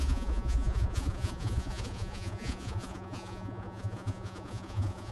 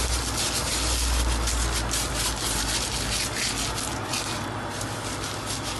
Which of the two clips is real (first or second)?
second